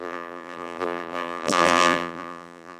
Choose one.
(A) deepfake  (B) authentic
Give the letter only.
A